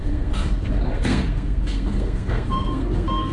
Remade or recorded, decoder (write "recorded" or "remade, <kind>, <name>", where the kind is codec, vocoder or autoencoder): remade, codec, SNAC